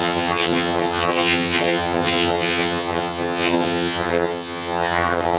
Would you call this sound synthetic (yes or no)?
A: yes